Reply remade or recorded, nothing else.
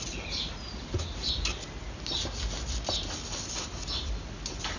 recorded